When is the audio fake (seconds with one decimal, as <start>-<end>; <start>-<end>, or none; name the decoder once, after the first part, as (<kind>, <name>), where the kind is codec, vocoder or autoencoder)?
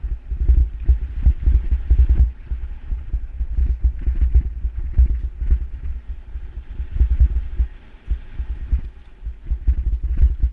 none